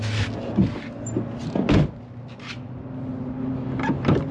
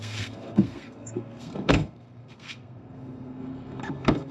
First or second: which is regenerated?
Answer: second